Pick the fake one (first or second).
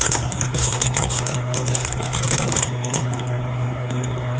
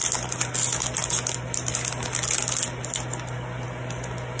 first